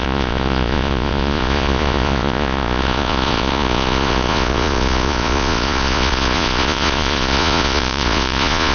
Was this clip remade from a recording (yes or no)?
yes